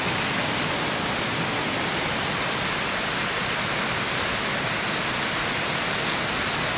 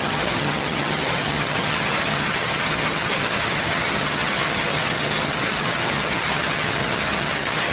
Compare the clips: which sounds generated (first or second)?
second